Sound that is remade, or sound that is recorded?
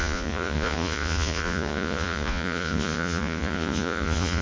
remade